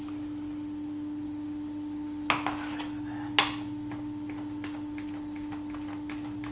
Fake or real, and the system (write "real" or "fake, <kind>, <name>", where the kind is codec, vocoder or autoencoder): real